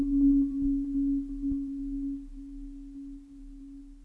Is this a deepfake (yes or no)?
no